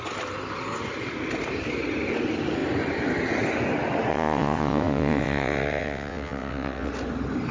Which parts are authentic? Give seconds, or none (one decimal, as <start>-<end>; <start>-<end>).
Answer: 0.0-4.1; 6.9-7.5